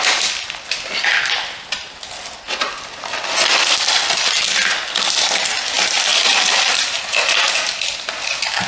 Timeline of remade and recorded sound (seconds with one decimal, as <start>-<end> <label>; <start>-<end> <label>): 0.0-8.7 recorded